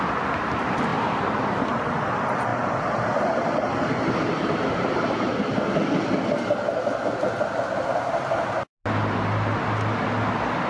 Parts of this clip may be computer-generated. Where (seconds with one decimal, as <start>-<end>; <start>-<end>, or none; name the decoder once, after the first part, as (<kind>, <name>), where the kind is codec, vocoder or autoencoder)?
0.9-1.7 (vocoder, BigVGAN v2); 2.5-5.4